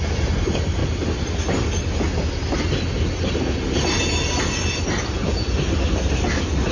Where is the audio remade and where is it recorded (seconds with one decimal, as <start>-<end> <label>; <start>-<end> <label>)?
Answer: 0.0-6.7 recorded